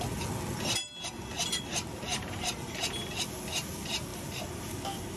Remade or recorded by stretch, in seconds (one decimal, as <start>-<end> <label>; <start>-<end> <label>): 0.0-2.1 recorded; 2.1-2.8 remade; 2.8-4.1 recorded; 4.1-4.6 remade; 4.6-5.2 recorded